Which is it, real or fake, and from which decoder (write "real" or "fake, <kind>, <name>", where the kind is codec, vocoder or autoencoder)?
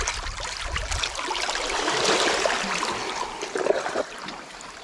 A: real